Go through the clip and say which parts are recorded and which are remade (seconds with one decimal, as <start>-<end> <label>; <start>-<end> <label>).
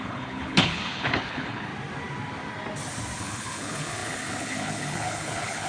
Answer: 0.0-1.7 remade; 1.7-3.2 recorded; 3.2-5.7 remade